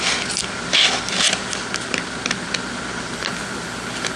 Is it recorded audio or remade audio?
recorded